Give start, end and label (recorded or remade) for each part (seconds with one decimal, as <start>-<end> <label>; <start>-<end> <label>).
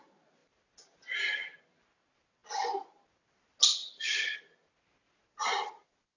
0.0-6.2 recorded